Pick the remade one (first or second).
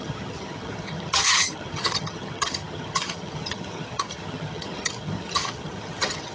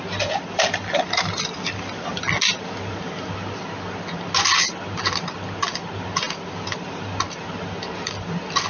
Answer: first